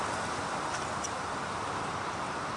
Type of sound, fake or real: real